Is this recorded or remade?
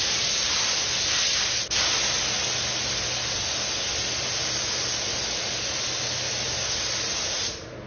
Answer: recorded